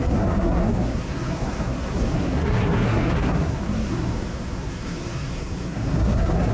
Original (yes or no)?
no